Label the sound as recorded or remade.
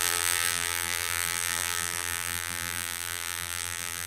remade